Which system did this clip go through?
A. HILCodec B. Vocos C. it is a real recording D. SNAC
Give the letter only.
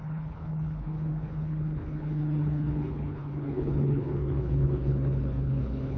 A